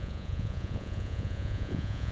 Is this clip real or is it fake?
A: fake